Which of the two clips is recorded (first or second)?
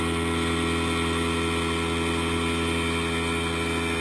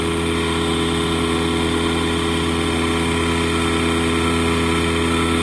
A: first